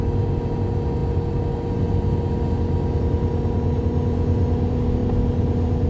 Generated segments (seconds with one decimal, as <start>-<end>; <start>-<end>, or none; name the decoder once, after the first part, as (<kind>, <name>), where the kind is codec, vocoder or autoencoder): none